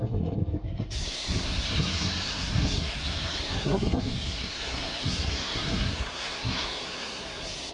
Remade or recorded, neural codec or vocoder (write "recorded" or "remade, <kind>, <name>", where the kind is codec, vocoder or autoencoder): remade, codec, SNAC